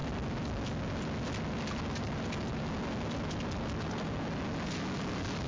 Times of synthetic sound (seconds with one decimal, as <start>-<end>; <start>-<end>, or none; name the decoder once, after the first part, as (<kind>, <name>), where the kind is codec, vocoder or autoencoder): none